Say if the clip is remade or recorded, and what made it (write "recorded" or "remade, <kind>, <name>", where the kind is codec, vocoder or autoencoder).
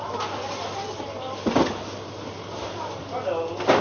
recorded